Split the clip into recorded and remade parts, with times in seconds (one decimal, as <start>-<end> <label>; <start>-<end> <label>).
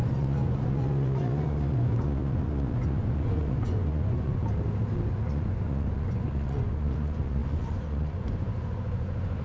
0.0-4.4 remade; 4.4-5.1 recorded; 5.1-9.4 remade